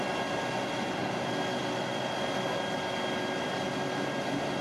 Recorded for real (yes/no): yes